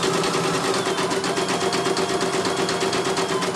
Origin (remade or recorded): recorded